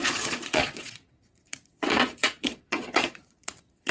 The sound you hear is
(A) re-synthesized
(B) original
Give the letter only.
A